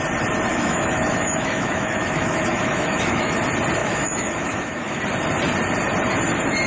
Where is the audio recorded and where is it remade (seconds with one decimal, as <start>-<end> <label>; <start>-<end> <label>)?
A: 0.0-0.5 recorded; 0.5-3.4 remade; 3.4-3.8 recorded; 3.8-5.0 remade; 5.0-6.7 recorded